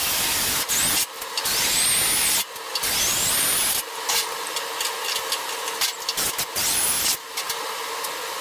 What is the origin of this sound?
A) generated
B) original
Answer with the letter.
B